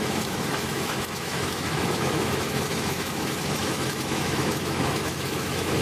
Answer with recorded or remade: remade